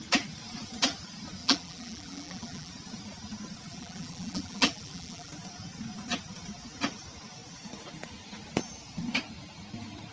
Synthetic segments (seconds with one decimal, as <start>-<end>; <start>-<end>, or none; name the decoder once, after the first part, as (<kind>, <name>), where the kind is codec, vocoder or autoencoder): 1.4-2.7 (vocoder, BigVGAN v2); 3.7-5.3